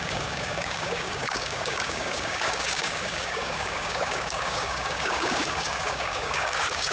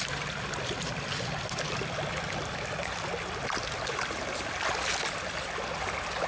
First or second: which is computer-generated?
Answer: first